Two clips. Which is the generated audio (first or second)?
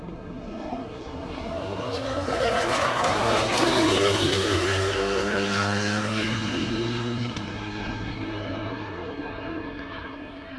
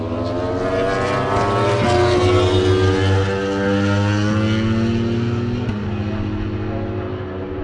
first